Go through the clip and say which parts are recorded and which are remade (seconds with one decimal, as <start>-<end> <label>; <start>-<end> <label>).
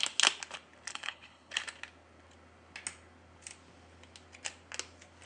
0.0-0.9 recorded; 0.9-1.5 remade; 1.5-5.3 recorded